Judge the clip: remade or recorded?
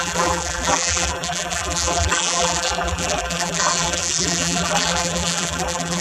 remade